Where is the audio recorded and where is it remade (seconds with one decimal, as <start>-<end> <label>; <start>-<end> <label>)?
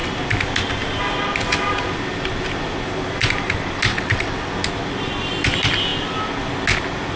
0.0-3.9 recorded; 3.9-4.5 remade; 4.5-7.2 recorded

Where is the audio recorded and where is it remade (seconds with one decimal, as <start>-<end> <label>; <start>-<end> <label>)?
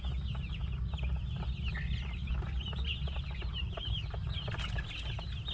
0.0-5.5 recorded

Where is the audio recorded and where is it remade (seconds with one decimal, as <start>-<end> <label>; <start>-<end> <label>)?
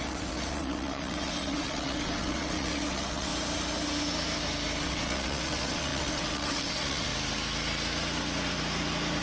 0.0-3.3 remade; 3.3-4.8 recorded; 4.8-7.1 remade; 7.1-9.2 recorded